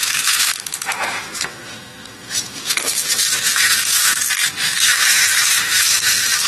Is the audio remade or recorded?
remade